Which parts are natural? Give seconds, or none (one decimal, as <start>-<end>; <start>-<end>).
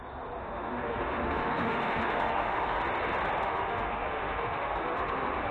0.0-0.4; 2.8-3.4